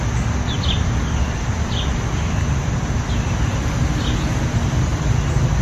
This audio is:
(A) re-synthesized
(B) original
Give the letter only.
B